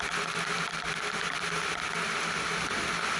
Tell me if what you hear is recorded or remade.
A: recorded